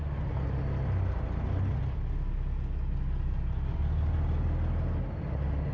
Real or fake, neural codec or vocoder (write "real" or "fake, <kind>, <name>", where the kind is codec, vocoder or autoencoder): real